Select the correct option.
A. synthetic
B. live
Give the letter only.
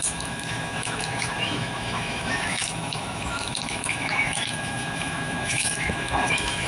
A